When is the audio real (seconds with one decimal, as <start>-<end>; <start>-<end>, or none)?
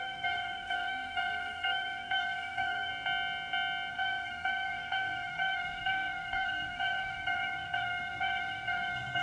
2.9-3.9